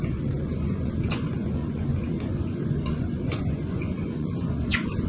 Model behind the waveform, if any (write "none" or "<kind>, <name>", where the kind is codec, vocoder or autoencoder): vocoder, Vocos